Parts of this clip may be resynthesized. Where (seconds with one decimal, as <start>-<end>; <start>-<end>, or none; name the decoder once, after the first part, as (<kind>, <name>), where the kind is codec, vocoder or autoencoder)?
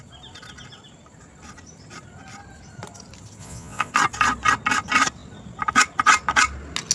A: 3.4-3.9 (vocoder, Vocos)